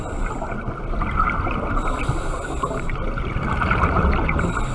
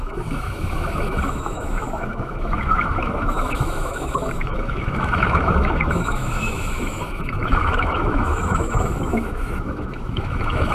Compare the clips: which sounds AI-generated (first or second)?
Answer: second